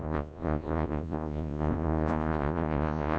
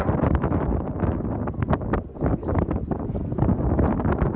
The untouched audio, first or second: second